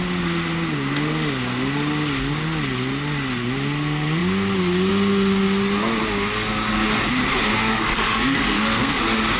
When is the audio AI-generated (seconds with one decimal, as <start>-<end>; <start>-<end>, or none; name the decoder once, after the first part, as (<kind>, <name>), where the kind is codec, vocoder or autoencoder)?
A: 7.7-8.9 (codec, SNAC)